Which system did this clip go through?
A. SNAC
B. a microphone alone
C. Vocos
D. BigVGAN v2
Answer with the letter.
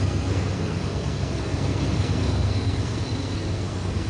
A